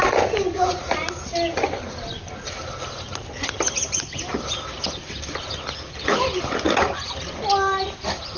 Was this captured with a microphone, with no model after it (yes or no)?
yes